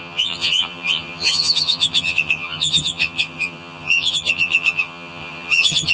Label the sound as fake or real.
fake